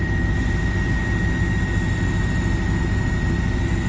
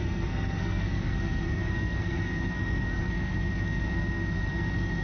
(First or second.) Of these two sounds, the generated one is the second